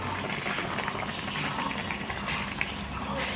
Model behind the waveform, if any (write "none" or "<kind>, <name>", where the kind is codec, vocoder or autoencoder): none